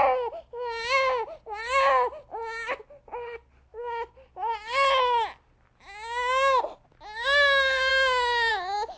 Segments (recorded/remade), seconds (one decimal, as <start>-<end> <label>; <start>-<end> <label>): 0.0-9.0 recorded